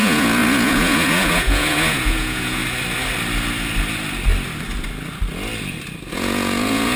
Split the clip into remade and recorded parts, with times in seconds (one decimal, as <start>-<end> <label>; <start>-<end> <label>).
0.0-2.6 remade; 2.6-6.1 recorded; 6.1-7.0 remade